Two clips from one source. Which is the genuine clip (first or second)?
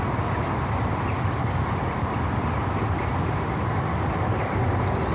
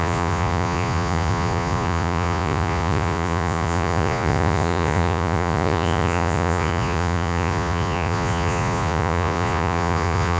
first